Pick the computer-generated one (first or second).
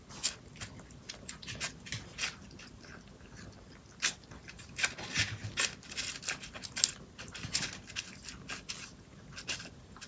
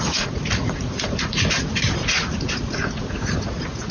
second